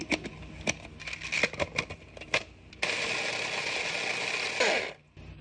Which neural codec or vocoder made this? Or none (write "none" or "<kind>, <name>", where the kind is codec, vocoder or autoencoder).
none